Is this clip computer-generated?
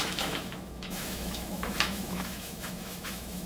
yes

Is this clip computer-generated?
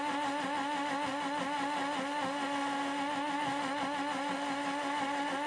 no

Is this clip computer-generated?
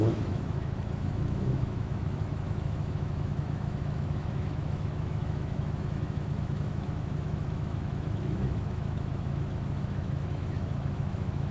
yes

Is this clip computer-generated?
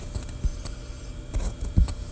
no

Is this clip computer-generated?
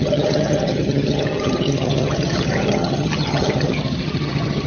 yes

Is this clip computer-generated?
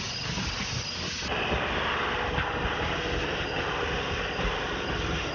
no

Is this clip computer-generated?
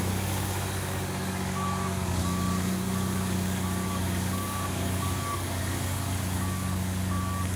yes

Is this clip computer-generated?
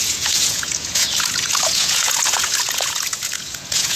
yes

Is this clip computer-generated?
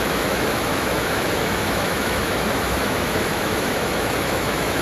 yes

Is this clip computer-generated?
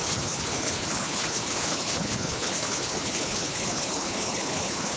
yes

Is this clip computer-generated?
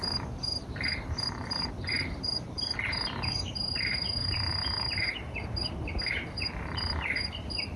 yes